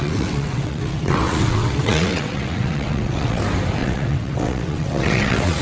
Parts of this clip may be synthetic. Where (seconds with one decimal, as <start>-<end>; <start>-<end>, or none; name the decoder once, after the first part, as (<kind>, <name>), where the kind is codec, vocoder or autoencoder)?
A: 0.0-3.4 (vocoder, WaveNeXt); 3.8-5.6